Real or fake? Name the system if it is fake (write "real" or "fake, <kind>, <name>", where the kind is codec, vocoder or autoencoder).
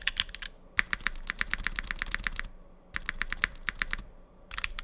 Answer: real